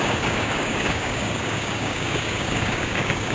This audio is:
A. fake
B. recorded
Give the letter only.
A